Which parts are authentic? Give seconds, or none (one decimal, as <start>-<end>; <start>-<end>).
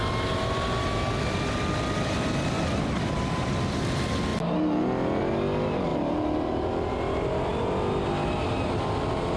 0.0-9.4